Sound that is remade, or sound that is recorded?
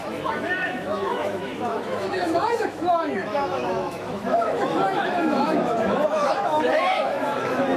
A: remade